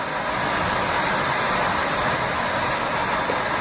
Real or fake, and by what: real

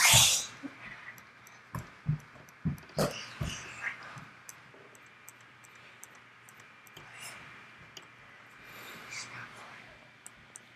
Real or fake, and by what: real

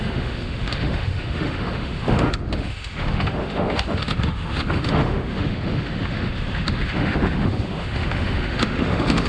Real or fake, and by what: fake, autoencoder, DAC-VAE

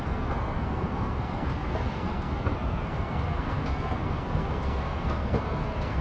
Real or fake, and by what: fake, codec, SNAC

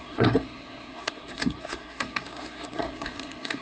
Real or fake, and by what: fake, codec, SNAC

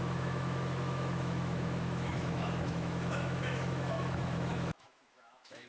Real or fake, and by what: fake, autoencoder, DAC-VAE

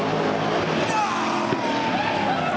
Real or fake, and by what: real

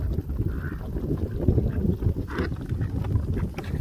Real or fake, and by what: real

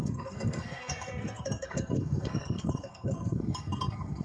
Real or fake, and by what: fake, codec, SNAC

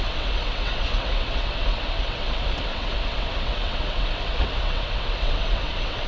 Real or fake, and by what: fake, vocoder, WaveNeXt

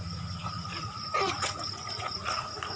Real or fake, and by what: fake, vocoder, Vocos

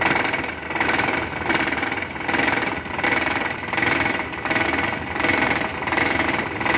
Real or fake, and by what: fake, vocoder, BigVGAN v2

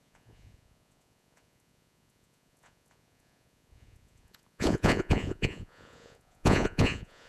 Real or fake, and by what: fake, vocoder, Vocos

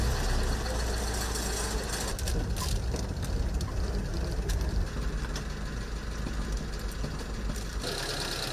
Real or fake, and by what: real